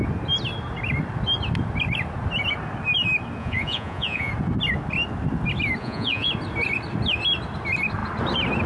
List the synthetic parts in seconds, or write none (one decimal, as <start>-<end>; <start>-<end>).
3.4-4.3; 5.8-6.3